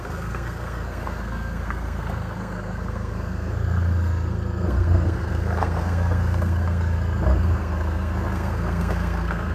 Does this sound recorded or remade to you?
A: remade